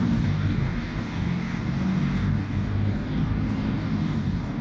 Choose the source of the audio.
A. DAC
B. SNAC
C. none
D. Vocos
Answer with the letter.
A